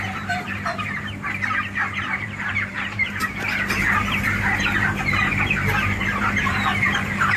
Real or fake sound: fake